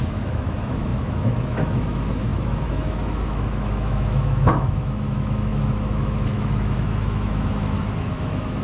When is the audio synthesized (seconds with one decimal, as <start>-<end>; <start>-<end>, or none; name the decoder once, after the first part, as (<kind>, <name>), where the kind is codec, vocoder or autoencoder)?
0.0-8.6 (autoencoder, DAC-VAE)